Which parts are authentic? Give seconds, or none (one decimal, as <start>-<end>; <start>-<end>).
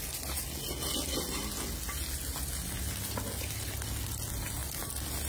0.0-5.3